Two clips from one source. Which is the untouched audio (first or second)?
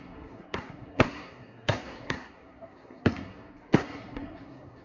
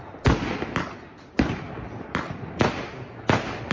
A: second